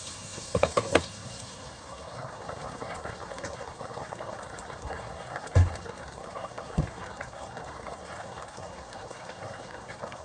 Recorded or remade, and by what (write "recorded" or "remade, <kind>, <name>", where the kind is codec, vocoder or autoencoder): remade, codec, SNAC